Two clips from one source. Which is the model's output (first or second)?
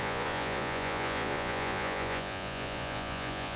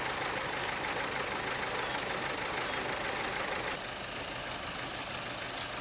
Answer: first